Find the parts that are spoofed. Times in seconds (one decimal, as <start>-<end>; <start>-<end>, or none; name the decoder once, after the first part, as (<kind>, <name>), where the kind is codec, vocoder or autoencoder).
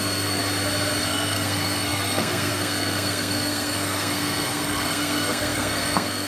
0.0-0.4 (codec, SNAC); 1.0-6.3